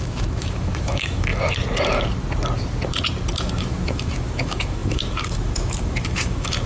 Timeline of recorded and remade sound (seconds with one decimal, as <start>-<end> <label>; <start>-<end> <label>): 0.0-1.3 remade; 1.3-3.4 recorded; 3.4-6.7 remade